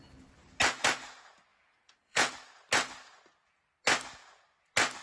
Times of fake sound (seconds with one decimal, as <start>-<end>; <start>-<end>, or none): 1.5-2.3